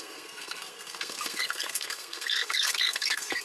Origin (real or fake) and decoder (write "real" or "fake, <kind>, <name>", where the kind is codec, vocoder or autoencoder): fake, codec, SNAC